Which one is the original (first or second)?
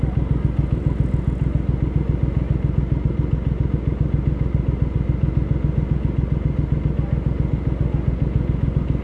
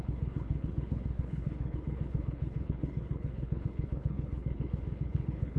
first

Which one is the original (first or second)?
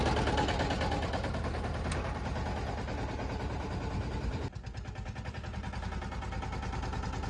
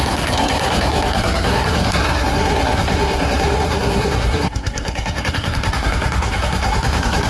first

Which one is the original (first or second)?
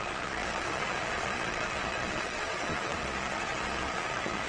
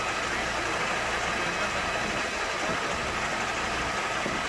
second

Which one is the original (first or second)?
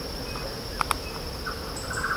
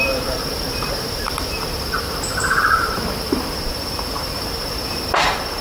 first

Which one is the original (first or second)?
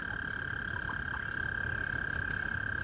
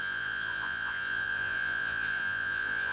first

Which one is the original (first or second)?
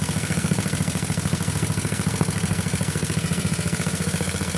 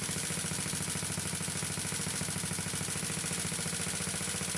second